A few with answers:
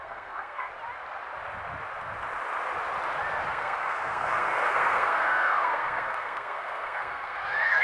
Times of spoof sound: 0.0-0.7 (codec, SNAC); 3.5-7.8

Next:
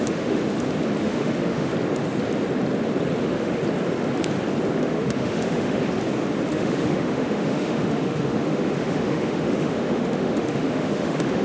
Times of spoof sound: 0.0-0.4 (autoencoder, DAC-VAE); 1.0-1.7; 3.2-3.6; 4.7-5.8; 6.5-11.4

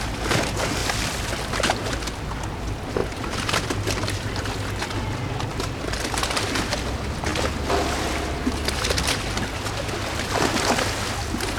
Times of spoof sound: 0.8-1.4 (vocoder, BigVGAN v2); 3.0-6.1